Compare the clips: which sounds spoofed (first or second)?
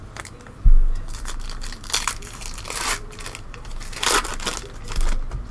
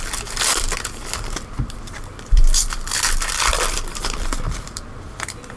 second